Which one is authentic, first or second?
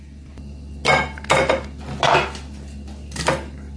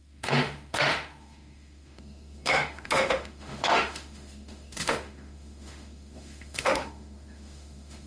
first